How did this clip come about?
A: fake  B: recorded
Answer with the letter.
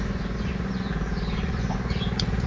A